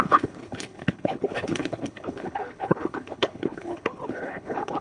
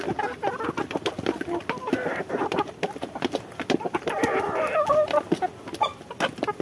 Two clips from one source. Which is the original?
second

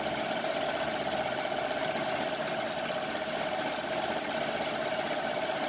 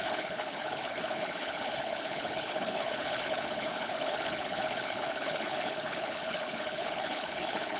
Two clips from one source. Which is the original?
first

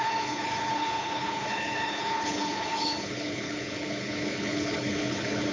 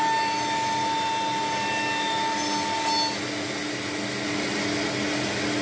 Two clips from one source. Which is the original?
second